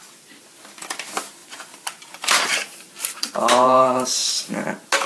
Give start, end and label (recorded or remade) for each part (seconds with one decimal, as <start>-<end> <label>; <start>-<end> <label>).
0.0-1.4 recorded; 1.4-4.5 remade; 4.5-5.1 recorded